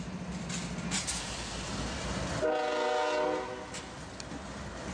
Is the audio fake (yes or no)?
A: no